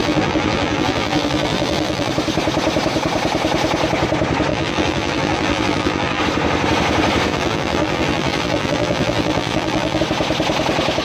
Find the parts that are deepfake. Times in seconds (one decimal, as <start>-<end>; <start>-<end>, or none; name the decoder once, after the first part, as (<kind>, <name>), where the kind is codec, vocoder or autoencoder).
0.0-2.1 (vocoder, BigVGAN v2); 4.5-6.2; 7.3-10.0

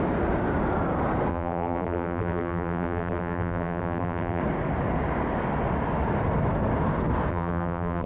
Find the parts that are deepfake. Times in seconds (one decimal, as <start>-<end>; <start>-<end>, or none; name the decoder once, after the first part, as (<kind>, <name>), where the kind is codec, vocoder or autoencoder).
1.3-4.4 (vocoder, BigVGAN v2); 7.3-8.1

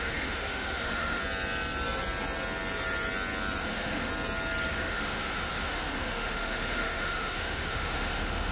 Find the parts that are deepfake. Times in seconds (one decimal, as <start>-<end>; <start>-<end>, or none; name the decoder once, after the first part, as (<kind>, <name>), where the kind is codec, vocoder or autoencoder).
0.0-1.2 (autoencoder, DAC-VAE); 3.6-4.1; 4.7-8.5

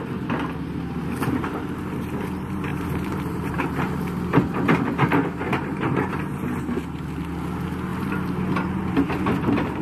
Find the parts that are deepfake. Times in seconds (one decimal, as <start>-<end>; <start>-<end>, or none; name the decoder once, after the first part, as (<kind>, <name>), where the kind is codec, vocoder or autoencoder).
2.7-3.8 (vocoder, BigVGAN v2); 5.7-6.2

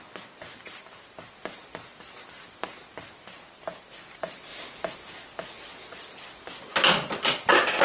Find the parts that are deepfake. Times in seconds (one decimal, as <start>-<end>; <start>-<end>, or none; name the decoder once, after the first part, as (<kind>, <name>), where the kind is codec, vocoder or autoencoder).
none